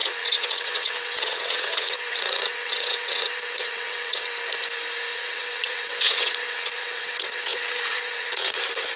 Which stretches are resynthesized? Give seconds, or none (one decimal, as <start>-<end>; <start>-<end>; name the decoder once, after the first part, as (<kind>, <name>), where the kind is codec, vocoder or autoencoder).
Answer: 0.0-4.3 (vocoder, WaveNeXt); 5.1-8.6